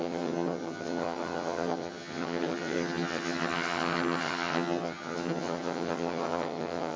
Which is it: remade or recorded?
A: remade